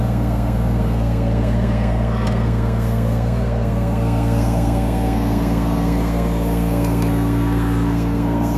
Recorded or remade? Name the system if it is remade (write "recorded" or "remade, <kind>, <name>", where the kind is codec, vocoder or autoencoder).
remade, codec, SNAC